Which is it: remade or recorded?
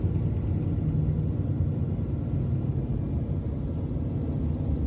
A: recorded